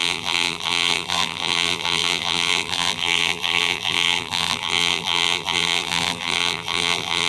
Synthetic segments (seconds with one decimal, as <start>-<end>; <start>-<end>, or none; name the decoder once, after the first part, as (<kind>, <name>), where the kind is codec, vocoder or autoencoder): 0.0-7.3 (vocoder, BigVGAN v2)